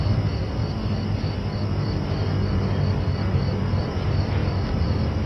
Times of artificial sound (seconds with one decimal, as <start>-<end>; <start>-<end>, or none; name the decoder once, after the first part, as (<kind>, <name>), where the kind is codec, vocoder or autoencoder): none